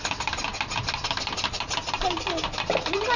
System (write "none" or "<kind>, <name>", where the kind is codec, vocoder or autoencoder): none